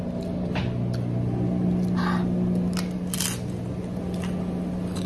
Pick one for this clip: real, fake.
real